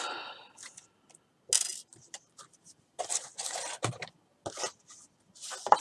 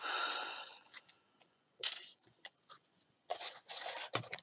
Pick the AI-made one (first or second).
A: second